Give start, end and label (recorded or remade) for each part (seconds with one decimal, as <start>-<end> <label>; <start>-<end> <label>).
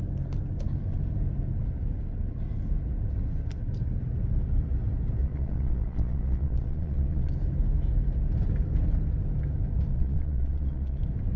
0.0-5.2 recorded; 5.2-7.3 remade; 7.3-9.9 recorded; 9.9-11.0 remade; 11.0-11.4 recorded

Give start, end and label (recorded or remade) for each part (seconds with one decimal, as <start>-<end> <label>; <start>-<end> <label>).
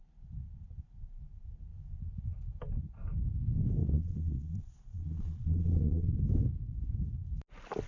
0.0-3.8 recorded; 3.8-6.1 remade; 6.1-7.9 recorded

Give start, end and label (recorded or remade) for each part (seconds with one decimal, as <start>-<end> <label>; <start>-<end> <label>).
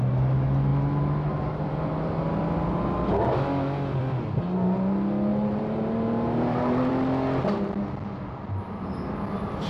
0.0-5.3 recorded; 5.3-6.9 remade; 6.9-9.7 recorded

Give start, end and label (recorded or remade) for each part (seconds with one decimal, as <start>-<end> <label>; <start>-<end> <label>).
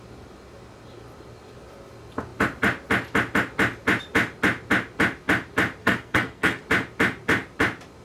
0.0-5.8 recorded; 5.8-6.6 remade; 6.6-8.0 recorded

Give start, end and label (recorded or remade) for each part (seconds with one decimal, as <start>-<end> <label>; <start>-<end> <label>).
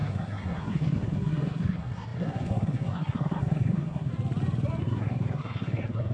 0.0-4.1 remade; 4.1-4.8 recorded; 4.8-6.1 remade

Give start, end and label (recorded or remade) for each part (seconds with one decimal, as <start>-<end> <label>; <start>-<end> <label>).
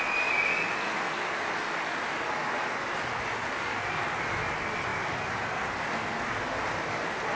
0.0-7.3 recorded